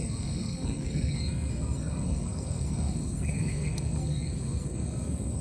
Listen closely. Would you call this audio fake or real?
fake